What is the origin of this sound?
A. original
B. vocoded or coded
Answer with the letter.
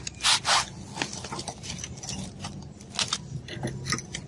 A